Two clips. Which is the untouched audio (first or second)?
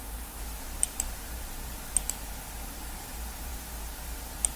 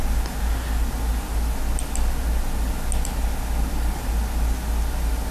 second